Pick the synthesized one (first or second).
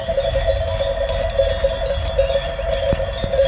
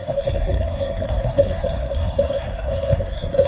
second